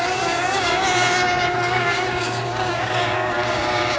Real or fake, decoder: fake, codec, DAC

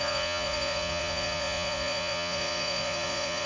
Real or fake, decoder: fake, vocoder, Vocos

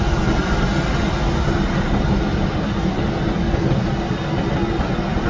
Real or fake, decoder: real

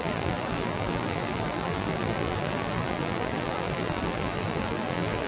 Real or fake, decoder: fake, vocoder, BigVGAN v2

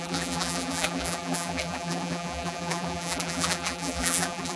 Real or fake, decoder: fake, vocoder, BigVGAN v2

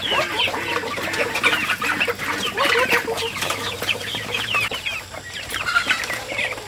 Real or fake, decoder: fake, vocoder, BigVGAN v2